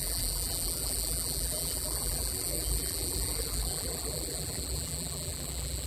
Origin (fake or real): fake